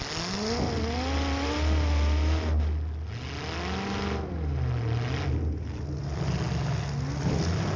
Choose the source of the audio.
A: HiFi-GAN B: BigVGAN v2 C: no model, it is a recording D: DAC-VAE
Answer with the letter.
C